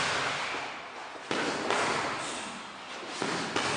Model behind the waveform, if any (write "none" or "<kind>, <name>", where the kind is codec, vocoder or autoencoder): none